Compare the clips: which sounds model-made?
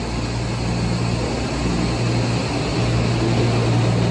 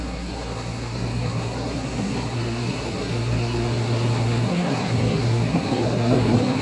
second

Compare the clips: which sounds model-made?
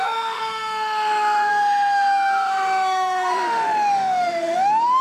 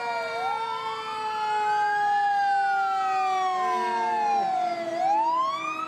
first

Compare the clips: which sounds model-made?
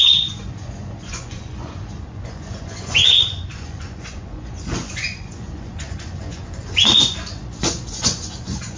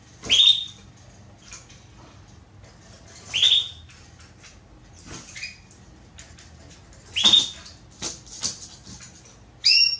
first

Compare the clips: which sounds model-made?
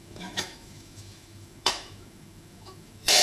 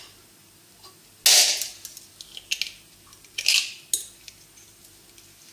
first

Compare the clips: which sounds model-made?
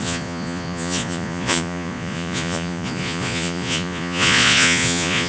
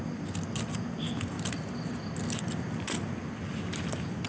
first